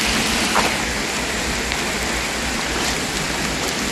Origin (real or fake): real